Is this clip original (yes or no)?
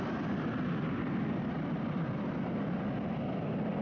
yes